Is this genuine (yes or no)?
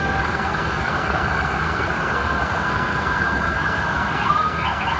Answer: no